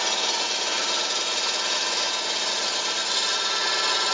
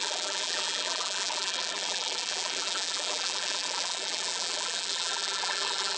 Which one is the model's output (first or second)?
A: second